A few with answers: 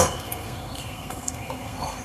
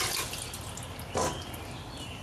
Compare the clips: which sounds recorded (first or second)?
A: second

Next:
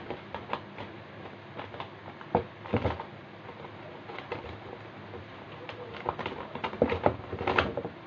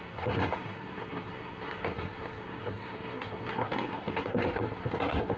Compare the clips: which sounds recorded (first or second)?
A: first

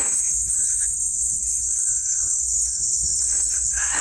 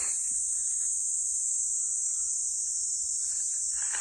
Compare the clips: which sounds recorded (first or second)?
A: second